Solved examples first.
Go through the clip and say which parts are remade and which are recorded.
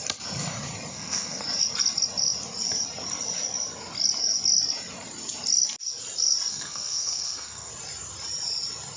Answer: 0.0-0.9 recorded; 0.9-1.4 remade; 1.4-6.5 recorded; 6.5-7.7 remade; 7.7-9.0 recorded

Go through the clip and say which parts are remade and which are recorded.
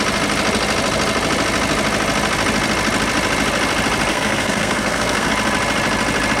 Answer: 0.0-4.1 recorded; 4.1-5.3 remade; 5.3-6.4 recorded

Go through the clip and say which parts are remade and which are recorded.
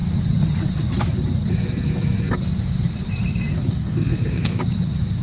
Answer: 0.0-3.7 recorded; 3.7-4.6 remade; 4.6-5.2 recorded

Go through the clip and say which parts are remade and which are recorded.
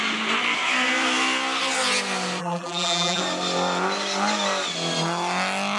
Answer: 0.0-2.4 recorded; 2.4-3.2 remade; 3.2-5.8 recorded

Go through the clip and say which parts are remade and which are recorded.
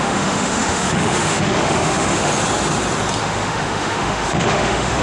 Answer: 0.0-2.3 remade; 2.3-3.2 recorded; 3.2-5.0 remade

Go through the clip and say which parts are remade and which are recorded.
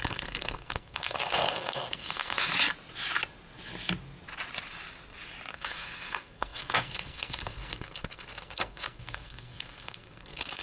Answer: 0.0-2.5 remade; 2.5-5.5 recorded; 5.5-10.6 remade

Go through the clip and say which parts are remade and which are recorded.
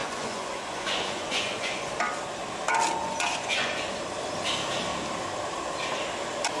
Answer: 0.0-1.9 remade; 1.9-3.0 recorded; 3.0-4.0 remade; 4.0-6.6 recorded